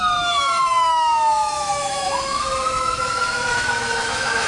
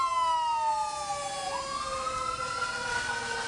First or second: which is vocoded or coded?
first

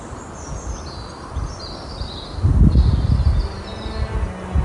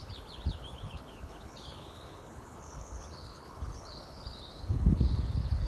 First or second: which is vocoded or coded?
second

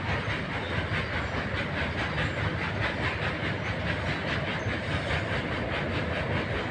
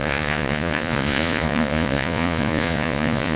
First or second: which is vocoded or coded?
second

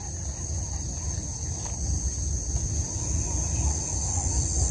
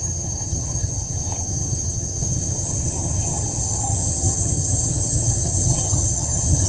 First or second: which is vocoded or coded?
second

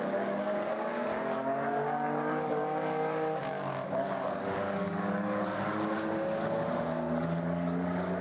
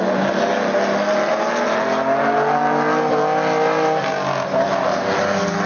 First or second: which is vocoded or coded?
first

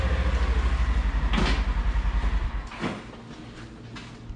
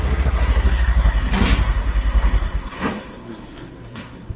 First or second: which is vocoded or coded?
second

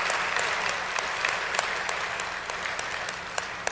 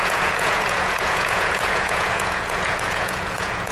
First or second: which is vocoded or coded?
second